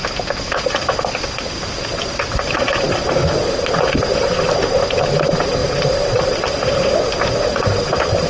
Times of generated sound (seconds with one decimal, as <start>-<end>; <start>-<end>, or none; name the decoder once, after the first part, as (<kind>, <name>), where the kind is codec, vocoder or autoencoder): none